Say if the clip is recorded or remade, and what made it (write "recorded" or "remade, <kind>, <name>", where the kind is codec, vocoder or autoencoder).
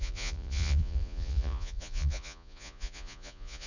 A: remade, vocoder, Vocos